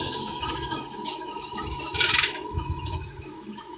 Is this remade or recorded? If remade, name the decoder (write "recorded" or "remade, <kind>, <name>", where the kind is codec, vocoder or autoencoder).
remade, autoencoder, DAC-VAE